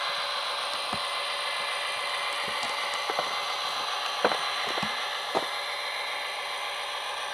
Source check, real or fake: real